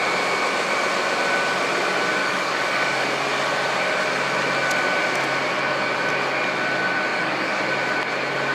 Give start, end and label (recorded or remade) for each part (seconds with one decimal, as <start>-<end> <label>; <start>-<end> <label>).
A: 0.0-2.2 recorded; 2.2-3.1 remade; 3.1-7.1 recorded; 7.1-7.6 remade; 7.6-8.5 recorded